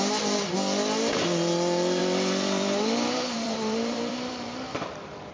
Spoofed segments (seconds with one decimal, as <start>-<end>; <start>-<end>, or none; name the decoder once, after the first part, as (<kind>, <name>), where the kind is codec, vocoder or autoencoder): 2.0-5.3 (vocoder, BigVGAN v2)